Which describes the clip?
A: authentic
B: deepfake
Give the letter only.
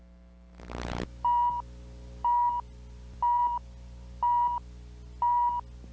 A